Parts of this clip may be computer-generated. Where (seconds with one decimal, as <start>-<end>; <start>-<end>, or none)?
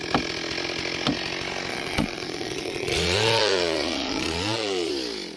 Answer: 1.7-4.9